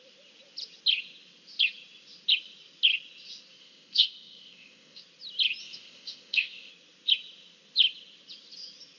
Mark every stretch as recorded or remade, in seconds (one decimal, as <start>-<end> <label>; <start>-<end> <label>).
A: 0.0-3.6 recorded; 3.6-5.0 remade; 5.0-5.6 recorded; 5.6-6.7 remade; 6.7-9.0 recorded